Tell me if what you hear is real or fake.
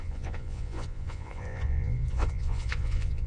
fake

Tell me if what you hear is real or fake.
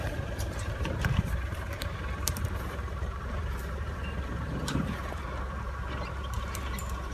fake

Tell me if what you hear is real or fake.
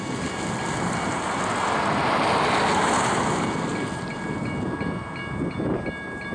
real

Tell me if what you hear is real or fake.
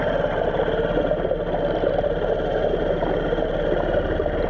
real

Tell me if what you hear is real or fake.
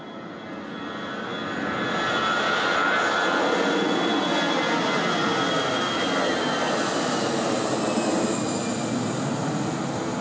real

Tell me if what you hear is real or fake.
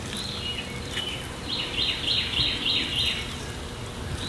real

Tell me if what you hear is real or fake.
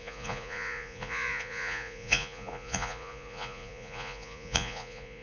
fake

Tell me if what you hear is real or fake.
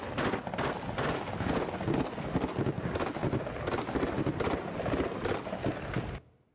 real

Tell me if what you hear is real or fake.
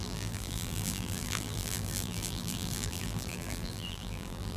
fake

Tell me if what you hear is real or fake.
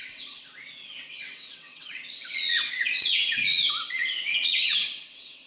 fake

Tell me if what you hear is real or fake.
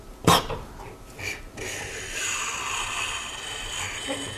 real